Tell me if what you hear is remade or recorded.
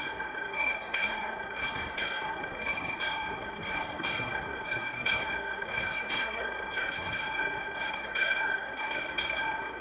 remade